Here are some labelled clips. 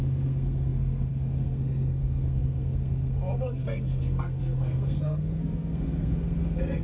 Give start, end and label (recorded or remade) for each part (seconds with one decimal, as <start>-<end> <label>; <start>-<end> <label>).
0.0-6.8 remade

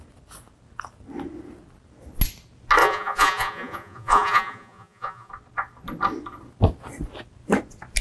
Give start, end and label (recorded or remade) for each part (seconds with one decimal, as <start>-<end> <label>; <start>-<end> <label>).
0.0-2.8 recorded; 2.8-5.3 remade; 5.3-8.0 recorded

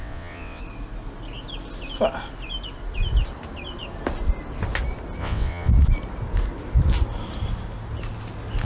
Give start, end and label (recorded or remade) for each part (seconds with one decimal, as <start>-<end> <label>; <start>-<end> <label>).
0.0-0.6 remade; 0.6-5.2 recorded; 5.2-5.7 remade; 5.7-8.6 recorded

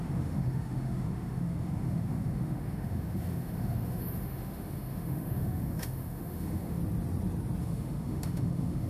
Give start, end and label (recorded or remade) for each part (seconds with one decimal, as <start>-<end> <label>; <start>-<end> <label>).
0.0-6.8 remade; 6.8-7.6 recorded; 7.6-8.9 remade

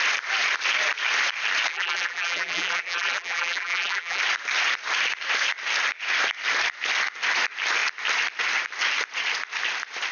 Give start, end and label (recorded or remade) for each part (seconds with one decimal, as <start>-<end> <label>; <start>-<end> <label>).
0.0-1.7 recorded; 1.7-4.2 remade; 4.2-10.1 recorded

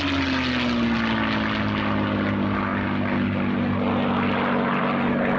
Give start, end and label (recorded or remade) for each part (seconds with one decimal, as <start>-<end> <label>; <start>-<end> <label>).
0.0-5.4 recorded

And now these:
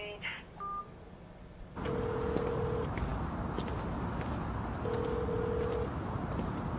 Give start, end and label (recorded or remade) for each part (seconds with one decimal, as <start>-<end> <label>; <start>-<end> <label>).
0.0-6.8 recorded

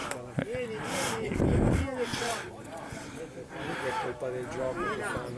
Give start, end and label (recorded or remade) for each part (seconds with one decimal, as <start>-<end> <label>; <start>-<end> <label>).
0.0-2.1 recorded; 2.1-3.2 remade; 3.2-5.4 recorded